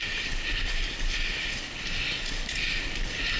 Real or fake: real